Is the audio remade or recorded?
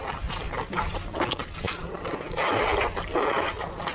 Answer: recorded